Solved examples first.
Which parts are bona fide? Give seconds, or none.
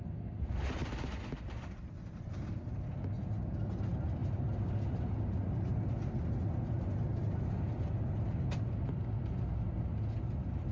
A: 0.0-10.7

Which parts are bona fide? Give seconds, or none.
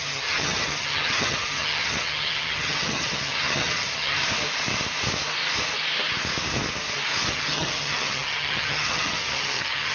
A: 4.2-7.3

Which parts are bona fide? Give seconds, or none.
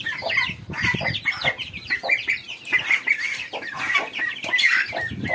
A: 0.0-5.3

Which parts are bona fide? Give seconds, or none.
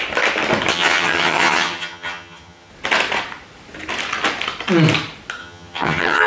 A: 0.0-0.7; 2.7-5.4